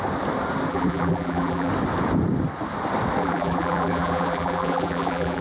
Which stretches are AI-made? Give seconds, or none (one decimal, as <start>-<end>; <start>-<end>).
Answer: 0.7-1.7; 3.2-5.4